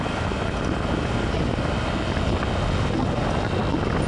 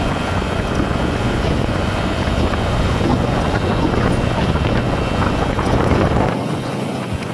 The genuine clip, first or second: first